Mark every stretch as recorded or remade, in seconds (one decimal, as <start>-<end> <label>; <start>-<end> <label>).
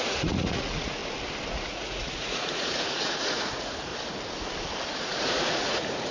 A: 0.0-1.0 remade; 1.0-1.5 recorded; 1.5-3.9 remade; 3.9-5.0 recorded; 5.0-6.1 remade